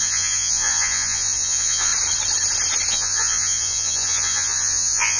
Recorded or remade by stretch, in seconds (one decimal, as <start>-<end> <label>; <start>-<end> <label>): 0.0-1.9 remade; 1.9-2.9 recorded; 2.9-5.2 remade